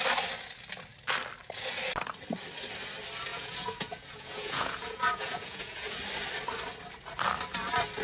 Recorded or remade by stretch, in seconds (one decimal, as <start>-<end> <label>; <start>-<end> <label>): 0.0-3.3 recorded; 3.3-5.9 remade; 5.9-8.0 recorded